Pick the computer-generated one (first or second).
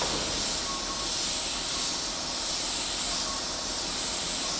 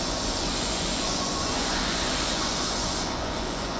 second